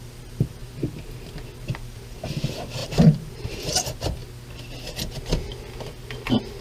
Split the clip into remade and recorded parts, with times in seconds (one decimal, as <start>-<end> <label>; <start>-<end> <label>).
0.0-0.6 remade; 0.6-1.6 recorded; 1.6-4.2 remade; 4.2-6.6 recorded